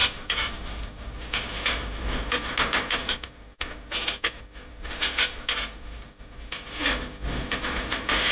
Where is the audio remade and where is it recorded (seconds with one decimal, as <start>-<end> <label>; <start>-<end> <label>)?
0.0-8.3 recorded

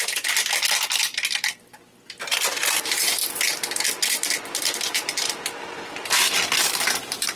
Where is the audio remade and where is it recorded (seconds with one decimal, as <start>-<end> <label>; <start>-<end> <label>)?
0.0-7.4 recorded

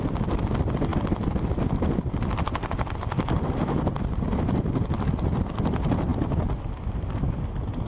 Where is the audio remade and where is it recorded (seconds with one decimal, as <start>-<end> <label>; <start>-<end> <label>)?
0.0-7.9 recorded

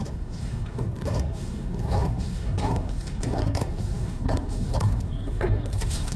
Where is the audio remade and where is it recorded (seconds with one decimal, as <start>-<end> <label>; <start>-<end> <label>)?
0.0-6.2 remade

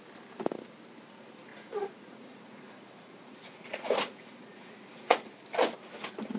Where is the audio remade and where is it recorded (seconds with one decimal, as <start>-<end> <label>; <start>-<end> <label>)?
0.0-1.5 recorded; 1.5-5.3 remade; 5.3-6.4 recorded